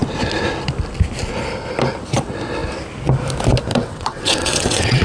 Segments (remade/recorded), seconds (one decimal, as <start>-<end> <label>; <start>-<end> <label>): 0.0-3.7 recorded; 3.7-5.0 remade